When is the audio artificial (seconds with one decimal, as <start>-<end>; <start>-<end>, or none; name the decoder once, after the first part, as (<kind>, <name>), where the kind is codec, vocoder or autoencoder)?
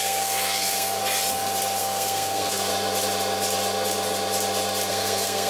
0.0-1.0 (codec, SNAC); 1.8-2.7; 4.9-5.5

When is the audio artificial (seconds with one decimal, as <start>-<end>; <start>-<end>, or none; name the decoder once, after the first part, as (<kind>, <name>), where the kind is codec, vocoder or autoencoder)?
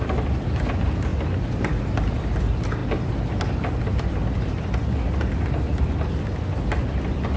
none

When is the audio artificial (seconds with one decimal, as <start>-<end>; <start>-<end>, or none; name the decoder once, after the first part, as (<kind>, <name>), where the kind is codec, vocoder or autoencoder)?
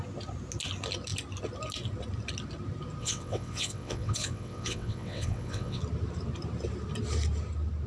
3.0-5.8 (vocoder, WaveNeXt)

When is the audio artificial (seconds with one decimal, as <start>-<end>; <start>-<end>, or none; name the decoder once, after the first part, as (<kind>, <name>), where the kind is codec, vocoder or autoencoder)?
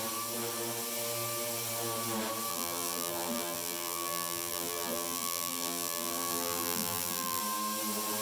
2.5-7.4 (vocoder, BigVGAN v2)